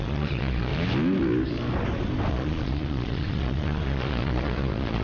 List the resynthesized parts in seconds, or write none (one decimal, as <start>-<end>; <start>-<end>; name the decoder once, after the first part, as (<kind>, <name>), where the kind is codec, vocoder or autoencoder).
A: 0.0-0.7 (vocoder, Vocos); 2.3-5.0